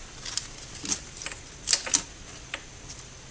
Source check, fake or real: real